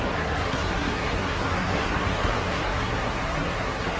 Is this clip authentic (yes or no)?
no